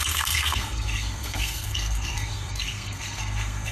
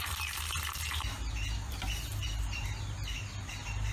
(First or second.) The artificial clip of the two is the first